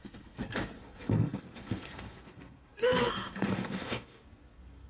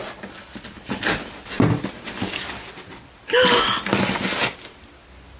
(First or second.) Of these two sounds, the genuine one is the second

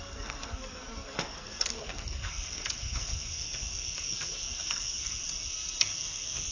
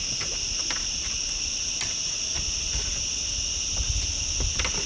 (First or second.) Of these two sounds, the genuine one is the second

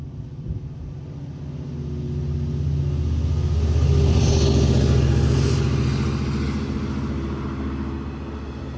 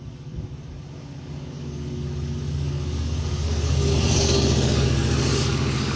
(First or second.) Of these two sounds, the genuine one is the first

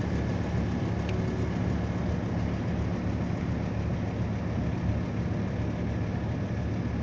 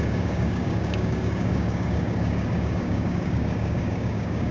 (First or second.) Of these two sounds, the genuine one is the first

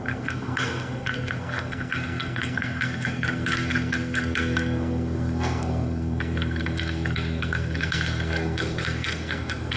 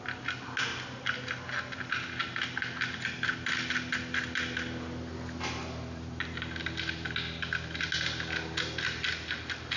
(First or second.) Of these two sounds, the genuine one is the second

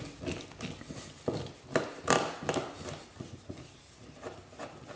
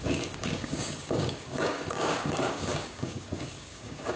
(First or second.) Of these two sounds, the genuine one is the first